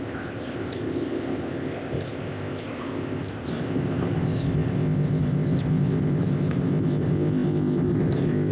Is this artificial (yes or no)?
yes